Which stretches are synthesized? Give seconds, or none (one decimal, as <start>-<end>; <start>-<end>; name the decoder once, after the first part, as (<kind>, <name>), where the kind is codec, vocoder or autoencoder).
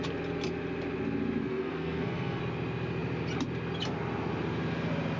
1.4-2.4 (codec, SNAC)